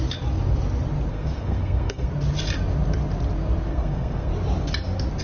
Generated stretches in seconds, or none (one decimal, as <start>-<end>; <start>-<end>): 1.1-2.1; 3.7-4.3